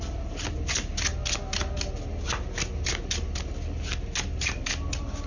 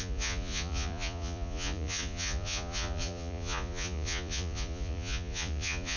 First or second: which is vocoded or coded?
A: second